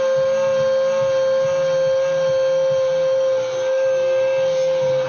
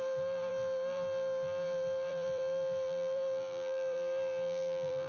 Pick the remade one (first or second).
second